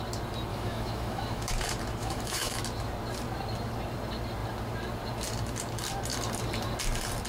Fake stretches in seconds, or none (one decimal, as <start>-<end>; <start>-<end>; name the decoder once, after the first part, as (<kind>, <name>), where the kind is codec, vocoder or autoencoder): 0.5-1.5 (autoencoder, DAC-VAE); 2.0-2.6